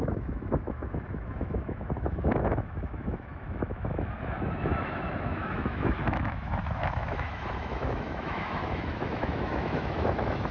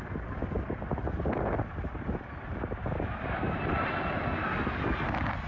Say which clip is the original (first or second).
second